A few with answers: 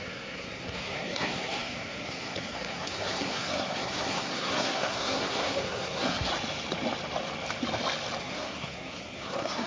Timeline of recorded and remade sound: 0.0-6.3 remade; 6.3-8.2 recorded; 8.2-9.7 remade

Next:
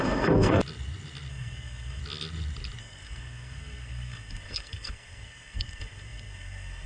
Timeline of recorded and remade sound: 0.0-0.6 remade; 0.6-1.3 recorded; 1.3-2.0 remade; 2.0-2.8 recorded; 2.8-6.9 remade

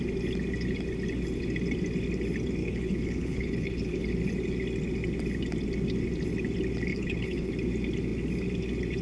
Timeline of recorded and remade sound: 0.0-2.6 recorded; 2.6-4.1 remade; 4.1-6.9 recorded; 6.9-7.5 remade; 7.5-9.0 recorded

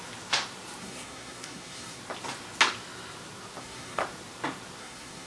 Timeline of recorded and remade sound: 0.0-0.8 recorded; 0.8-2.0 remade; 2.0-3.6 recorded; 3.6-4.0 remade; 4.0-4.8 recorded; 4.8-5.3 remade

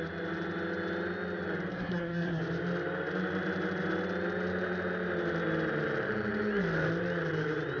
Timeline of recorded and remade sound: 0.0-1.7 recorded; 1.7-2.4 remade; 2.4-7.8 recorded

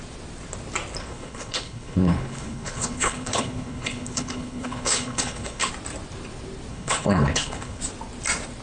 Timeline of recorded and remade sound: 0.0-1.0 recorded; 1.0-5.7 remade; 5.7-6.7 recorded; 6.7-7.8 remade; 7.8-8.6 recorded

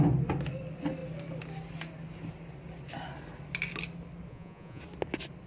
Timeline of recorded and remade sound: 0.0-4.3 recorded; 4.3-4.8 remade; 4.8-5.5 recorded

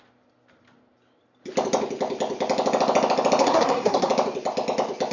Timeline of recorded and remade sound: 0.0-3.4 recorded; 3.4-4.1 remade; 4.1-5.1 recorded